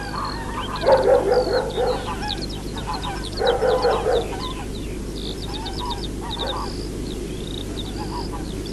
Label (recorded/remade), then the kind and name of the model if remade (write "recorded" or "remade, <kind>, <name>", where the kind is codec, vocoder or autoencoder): recorded